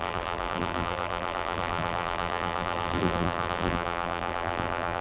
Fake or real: fake